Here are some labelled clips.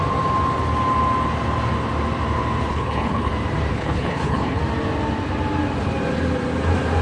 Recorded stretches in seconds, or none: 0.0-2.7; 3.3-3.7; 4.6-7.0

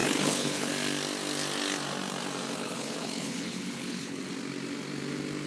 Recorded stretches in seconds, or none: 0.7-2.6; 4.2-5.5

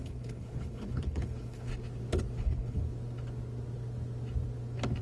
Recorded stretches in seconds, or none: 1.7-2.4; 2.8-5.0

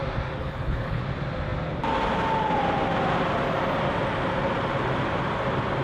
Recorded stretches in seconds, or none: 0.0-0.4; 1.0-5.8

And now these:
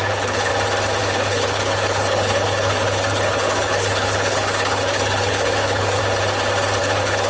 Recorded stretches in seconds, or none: 0.5-1.0; 6.0-6.8

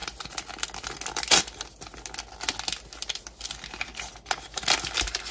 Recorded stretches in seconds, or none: 0.0-5.3